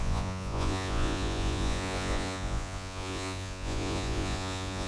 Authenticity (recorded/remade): remade